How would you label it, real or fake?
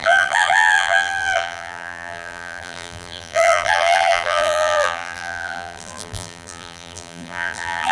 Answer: fake